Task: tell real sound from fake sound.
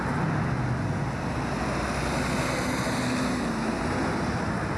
real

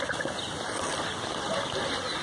real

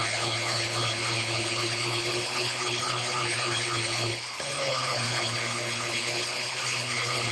fake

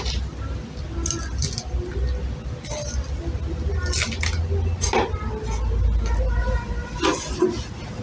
real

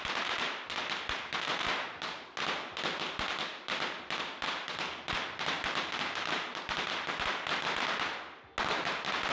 real